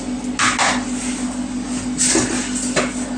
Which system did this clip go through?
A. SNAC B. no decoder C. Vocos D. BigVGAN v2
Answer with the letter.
B